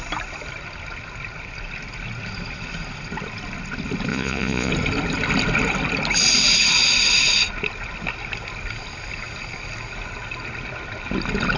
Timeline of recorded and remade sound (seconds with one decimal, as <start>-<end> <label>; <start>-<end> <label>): 0.0-4.1 recorded; 4.1-4.7 remade; 4.7-11.6 recorded